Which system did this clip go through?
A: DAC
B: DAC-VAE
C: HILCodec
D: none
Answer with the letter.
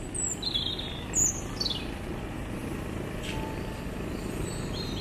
D